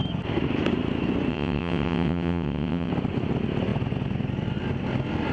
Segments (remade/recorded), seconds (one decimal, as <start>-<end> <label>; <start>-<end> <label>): 0.0-1.3 recorded; 1.3-2.9 remade; 2.9-5.3 recorded